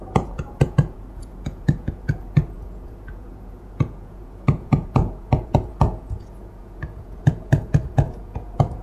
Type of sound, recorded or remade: remade